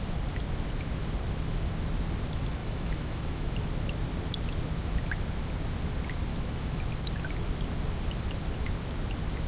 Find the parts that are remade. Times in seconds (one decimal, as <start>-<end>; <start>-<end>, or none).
2.6-3.5; 6.3-6.8